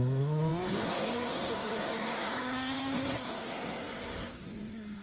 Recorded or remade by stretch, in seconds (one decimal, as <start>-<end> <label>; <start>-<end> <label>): 0.0-5.0 remade